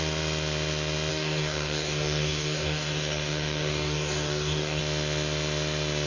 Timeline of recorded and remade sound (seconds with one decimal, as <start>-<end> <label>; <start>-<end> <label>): 0.0-1.1 recorded; 1.1-4.8 remade; 4.8-6.1 recorded